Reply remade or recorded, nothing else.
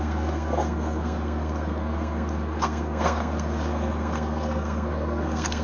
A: remade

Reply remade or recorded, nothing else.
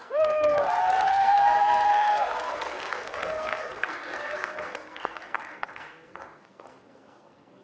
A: remade